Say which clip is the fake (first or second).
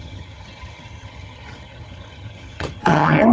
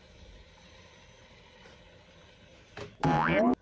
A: first